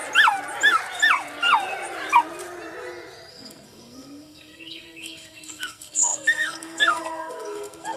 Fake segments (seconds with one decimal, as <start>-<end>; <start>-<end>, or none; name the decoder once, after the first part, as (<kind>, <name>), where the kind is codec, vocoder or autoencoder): 3.3-8.0 (codec, SNAC)